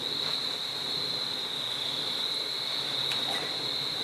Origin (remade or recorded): recorded